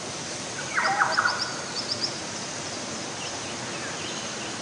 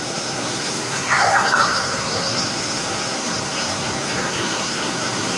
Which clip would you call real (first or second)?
first